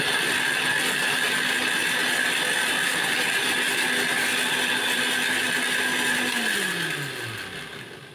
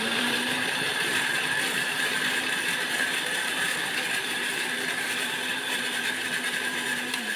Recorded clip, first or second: first